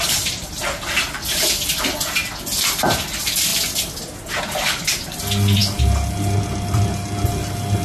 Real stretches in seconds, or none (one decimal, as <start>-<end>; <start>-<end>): 0.0-7.8

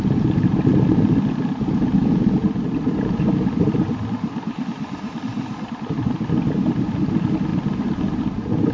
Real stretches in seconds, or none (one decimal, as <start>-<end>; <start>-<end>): 0.0-8.7

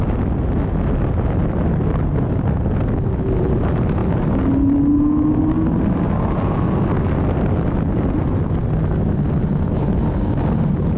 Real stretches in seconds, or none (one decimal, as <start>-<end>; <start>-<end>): 0.0-11.0

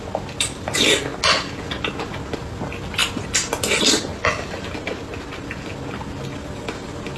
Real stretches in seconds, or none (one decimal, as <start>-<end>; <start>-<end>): 0.0-7.2

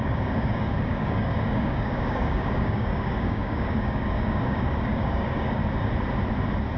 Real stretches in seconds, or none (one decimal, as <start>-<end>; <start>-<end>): 5.6-6.8

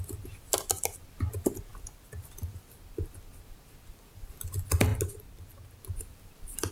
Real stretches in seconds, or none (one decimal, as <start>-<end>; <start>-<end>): 4.9-5.8